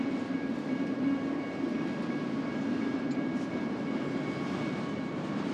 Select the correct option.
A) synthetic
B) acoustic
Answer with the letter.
B